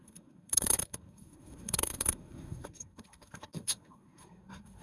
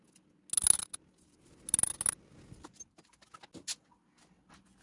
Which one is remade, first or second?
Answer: first